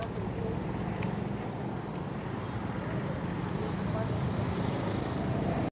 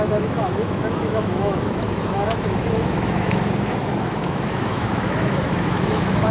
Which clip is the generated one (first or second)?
second